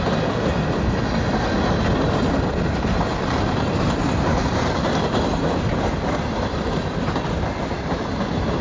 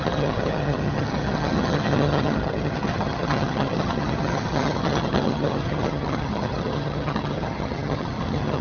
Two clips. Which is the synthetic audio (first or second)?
second